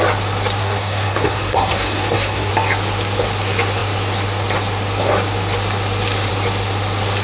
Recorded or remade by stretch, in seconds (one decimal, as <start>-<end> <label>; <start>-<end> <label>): 0.0-0.6 recorded; 0.6-2.5 remade; 2.5-7.2 recorded